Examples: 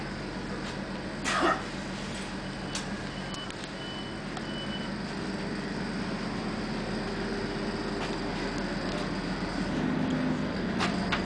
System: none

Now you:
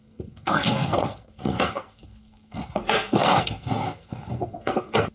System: codec, SNAC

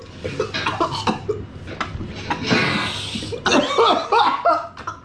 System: none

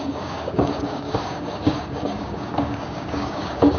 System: codec, DAC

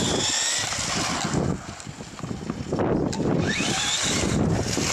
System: none